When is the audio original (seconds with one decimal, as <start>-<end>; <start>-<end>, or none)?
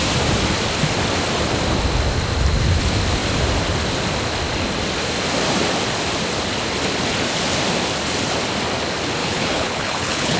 0.0-9.2